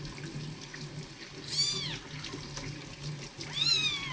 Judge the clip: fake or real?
real